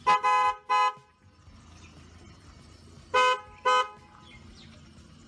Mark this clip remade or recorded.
recorded